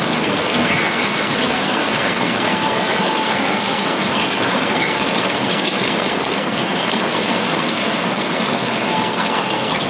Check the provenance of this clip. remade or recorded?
remade